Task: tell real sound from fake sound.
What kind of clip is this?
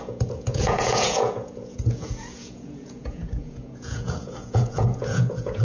fake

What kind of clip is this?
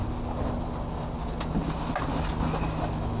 real